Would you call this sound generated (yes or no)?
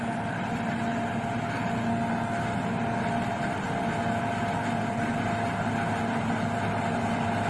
no